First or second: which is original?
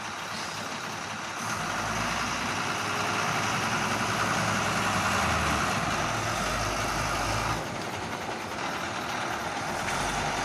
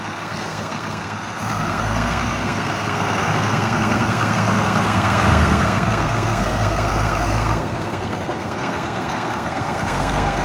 first